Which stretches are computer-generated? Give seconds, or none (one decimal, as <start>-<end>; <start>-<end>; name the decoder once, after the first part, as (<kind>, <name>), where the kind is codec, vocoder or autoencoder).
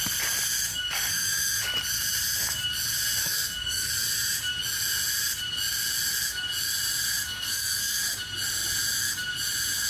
0.7-1.6 (codec, SNAC); 3.2-3.9; 7.3-8.0